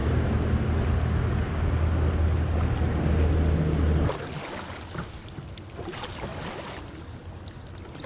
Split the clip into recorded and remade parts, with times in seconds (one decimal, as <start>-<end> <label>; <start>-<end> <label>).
0.0-8.1 recorded